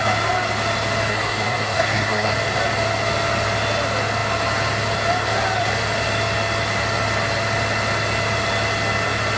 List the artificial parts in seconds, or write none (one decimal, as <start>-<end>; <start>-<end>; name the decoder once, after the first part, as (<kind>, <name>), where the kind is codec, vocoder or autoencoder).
1.1-2.3 (codec, SNAC)